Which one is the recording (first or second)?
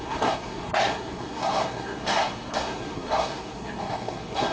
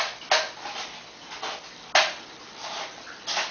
second